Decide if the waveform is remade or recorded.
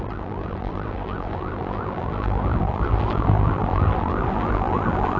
remade